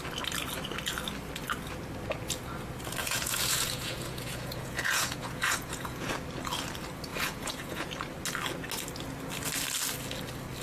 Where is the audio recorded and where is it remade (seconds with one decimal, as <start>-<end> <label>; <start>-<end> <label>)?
0.0-3.0 recorded; 3.0-6.1 remade; 6.1-7.1 recorded; 7.1-7.9 remade; 7.9-10.6 recorded